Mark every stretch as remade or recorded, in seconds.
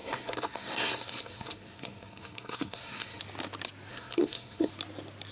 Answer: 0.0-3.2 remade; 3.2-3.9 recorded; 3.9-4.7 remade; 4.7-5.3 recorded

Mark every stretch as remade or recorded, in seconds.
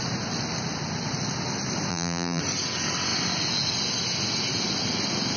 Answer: 0.0-1.9 recorded; 1.9-2.4 remade; 2.4-5.4 recorded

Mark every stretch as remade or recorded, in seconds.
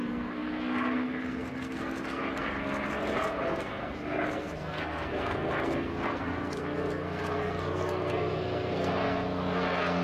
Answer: 0.0-10.0 remade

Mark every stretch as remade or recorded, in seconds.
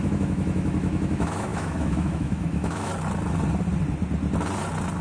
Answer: 0.0-2.9 remade; 2.9-5.0 recorded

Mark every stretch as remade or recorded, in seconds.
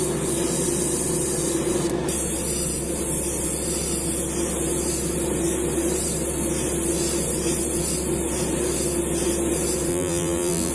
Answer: 0.0-9.9 recorded; 9.9-10.7 remade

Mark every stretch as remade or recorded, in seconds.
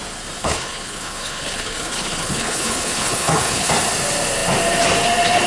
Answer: 0.0-0.4 recorded; 0.4-3.7 remade; 3.7-5.5 recorded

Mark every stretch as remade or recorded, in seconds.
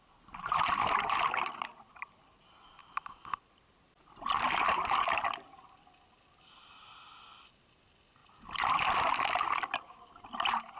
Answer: 0.0-10.8 recorded